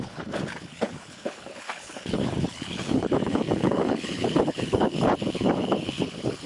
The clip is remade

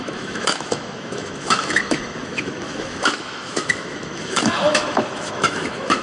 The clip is remade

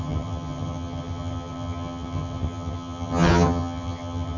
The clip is remade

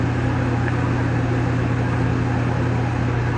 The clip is recorded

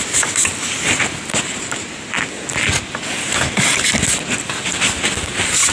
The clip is recorded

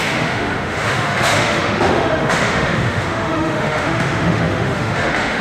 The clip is remade